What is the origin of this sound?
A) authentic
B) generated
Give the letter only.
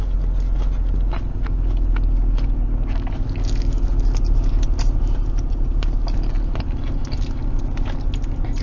A